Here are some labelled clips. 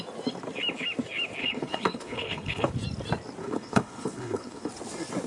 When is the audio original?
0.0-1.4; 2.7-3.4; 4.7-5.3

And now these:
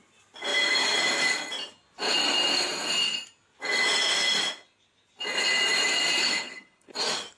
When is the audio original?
0.0-6.2; 6.9-7.4